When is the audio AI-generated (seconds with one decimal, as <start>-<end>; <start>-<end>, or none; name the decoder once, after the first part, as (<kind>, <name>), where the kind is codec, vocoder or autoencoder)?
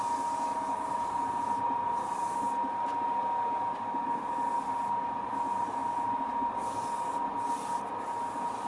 none